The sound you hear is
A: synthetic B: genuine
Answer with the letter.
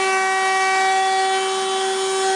B